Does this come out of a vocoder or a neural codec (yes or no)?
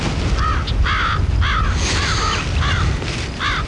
no